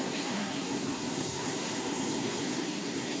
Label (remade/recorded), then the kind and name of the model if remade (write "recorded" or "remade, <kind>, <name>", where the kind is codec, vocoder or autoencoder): remade, codec, SNAC